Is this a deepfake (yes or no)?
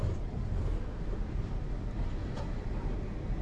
no